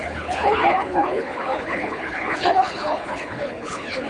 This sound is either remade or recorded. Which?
remade